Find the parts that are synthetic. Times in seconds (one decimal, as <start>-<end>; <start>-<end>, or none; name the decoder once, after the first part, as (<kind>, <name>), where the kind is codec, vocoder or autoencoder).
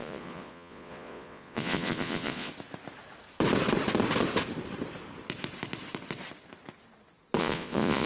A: 0.0-2.5 (vocoder, Vocos); 7.4-8.1